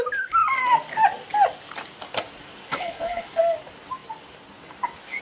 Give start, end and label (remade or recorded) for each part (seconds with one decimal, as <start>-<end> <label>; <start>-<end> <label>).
0.0-2.7 recorded; 2.7-3.4 remade; 3.4-5.2 recorded